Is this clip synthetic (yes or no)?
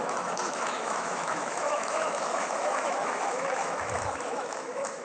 yes